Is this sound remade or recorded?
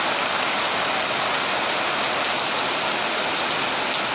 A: recorded